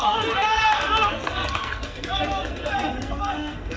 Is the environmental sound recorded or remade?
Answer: remade